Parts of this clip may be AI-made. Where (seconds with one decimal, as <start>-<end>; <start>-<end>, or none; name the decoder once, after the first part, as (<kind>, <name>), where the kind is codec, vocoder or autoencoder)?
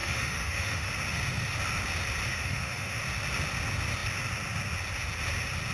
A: 0.0-0.9 (autoencoder, DAC-VAE); 2.3-3.0